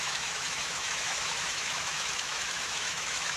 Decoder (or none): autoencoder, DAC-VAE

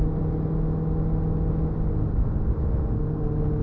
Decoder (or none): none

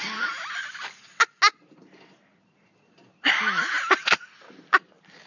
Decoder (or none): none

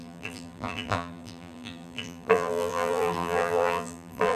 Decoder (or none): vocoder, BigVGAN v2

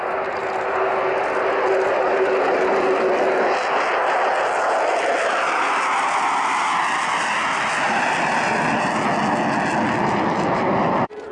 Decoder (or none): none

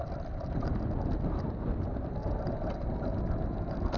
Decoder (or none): none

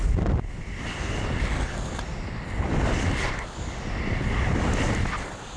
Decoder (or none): none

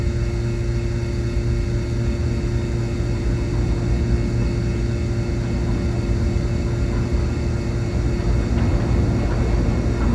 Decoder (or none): none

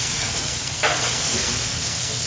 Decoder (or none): codec, SNAC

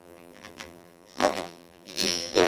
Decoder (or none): vocoder, BigVGAN v2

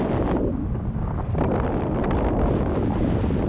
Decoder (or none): none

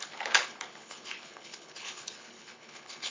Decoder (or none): codec, HILCodec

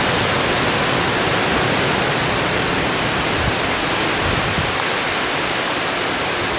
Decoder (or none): none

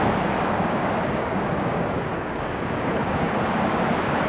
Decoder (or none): codec, DAC